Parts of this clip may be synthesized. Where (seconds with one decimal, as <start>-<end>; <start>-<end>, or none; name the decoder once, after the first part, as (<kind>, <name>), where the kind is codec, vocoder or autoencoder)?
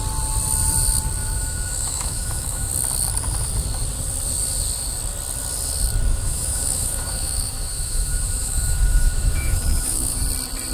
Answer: 1.2-2.7 (autoencoder, DAC-VAE); 6.1-10.2